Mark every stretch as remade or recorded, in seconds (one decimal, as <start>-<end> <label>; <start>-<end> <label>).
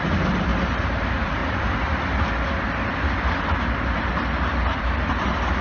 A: 0.0-1.4 remade; 1.4-4.8 recorded; 4.8-5.6 remade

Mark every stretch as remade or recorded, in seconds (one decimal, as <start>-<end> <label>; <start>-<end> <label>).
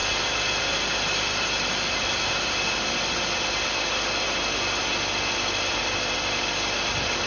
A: 0.0-7.3 recorded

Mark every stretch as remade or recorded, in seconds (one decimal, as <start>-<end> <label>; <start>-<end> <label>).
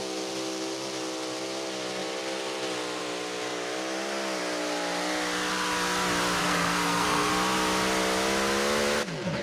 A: 0.0-6.4 recorded; 6.4-7.3 remade; 7.3-9.4 recorded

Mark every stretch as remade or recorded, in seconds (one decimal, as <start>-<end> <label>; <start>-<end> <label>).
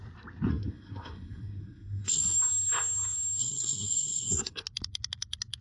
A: 0.0-0.5 recorded; 0.5-2.2 remade; 2.2-3.4 recorded; 3.4-4.6 remade; 4.6-5.6 recorded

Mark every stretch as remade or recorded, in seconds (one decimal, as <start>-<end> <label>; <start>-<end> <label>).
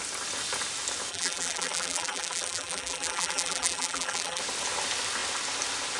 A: 0.0-1.1 recorded; 1.1-4.4 remade; 4.4-6.0 recorded